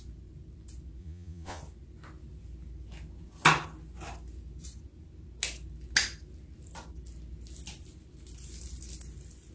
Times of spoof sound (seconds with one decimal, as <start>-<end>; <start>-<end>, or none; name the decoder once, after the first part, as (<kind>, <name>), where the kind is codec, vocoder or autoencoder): 1.0-1.6 (vocoder, Vocos)